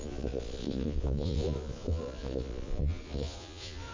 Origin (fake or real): fake